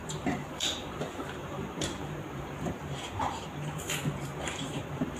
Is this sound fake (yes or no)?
yes